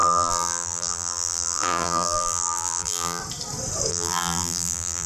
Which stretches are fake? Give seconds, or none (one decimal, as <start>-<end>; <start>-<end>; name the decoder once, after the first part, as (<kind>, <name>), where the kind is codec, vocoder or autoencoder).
0.0-3.2 (vocoder, BigVGAN v2); 3.9-5.1